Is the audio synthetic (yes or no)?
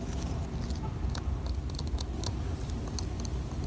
no